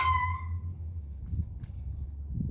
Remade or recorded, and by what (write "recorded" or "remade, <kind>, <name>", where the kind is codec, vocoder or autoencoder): recorded